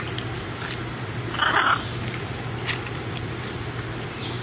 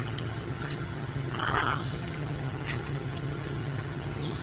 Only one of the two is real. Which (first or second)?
first